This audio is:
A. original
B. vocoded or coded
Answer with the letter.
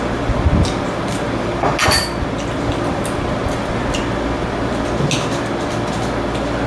A